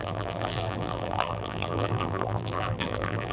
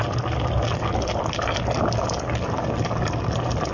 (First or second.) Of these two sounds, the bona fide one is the second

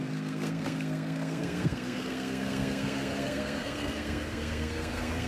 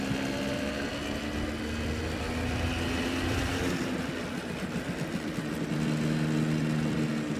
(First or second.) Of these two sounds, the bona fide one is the second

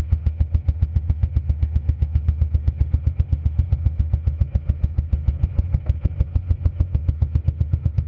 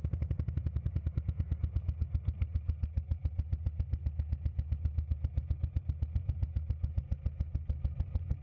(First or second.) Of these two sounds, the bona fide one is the second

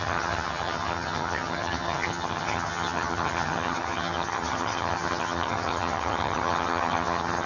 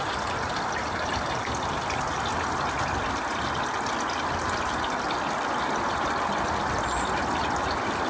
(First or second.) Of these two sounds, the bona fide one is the second